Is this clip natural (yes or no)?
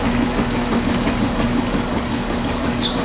no